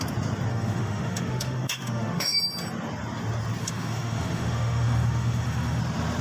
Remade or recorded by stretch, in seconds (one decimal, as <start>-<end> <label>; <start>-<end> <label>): 0.0-0.5 recorded; 0.5-2.4 remade; 2.4-3.6 recorded; 3.6-5.8 remade; 5.8-6.2 recorded